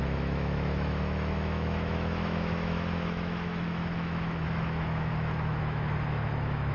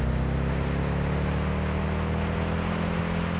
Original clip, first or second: second